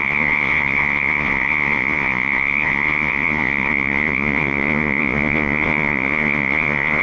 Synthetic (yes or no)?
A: yes